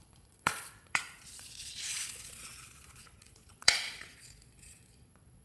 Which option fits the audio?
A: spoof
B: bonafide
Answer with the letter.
A